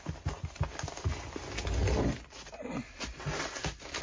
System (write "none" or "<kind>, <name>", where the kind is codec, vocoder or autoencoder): none